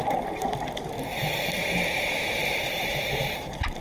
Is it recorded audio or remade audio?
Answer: remade